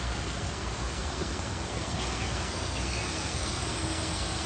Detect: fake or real fake